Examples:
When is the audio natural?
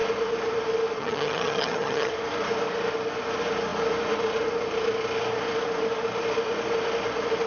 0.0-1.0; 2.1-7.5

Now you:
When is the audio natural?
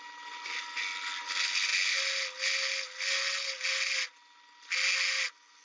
0.0-5.6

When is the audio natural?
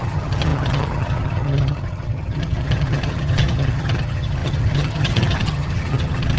none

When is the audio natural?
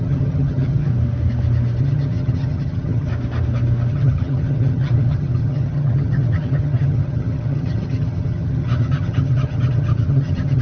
0.9-1.8; 3.1-3.9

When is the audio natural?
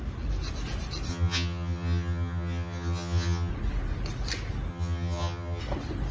0.0-1.1; 3.5-4.7; 5.6-6.1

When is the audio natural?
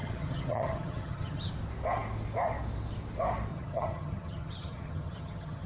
1.5-3.5